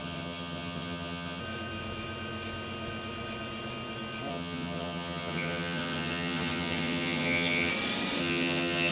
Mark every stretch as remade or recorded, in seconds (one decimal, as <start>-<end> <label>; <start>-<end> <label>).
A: 0.0-1.4 remade; 1.4-4.3 recorded; 4.3-7.7 remade; 7.7-8.2 recorded; 8.2-8.9 remade